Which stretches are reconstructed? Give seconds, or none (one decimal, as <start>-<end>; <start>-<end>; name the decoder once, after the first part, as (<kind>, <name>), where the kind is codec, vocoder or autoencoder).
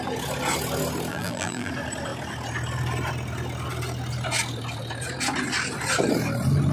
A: 1.1-1.7 (vocoder, BigVGAN v2)